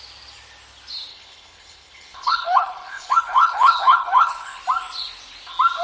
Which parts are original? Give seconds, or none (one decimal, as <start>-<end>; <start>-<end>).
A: 0.0-1.1; 4.6-5.8